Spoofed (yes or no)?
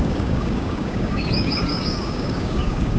yes